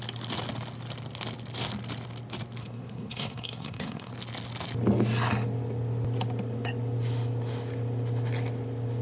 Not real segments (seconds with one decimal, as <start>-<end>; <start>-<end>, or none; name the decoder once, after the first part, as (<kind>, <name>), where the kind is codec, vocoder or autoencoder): 2.6-4.1 (codec, SNAC)